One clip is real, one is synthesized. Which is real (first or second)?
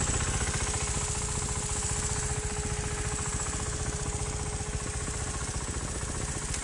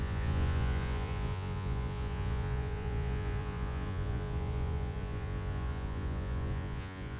first